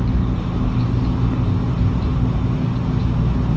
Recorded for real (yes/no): yes